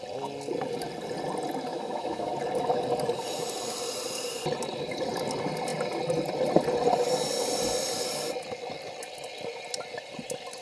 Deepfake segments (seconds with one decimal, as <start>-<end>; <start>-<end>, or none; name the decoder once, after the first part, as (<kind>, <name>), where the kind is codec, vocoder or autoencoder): 1.7-2.3 (autoencoder, DAC-VAE)